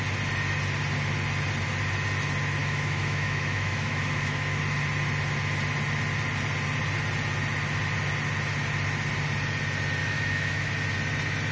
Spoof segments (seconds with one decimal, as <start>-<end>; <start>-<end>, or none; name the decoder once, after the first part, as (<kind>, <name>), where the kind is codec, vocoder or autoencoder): 2.6-4.6 (autoencoder, DAC-VAE); 10.0-10.7